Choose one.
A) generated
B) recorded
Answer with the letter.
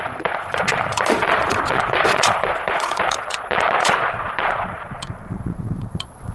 A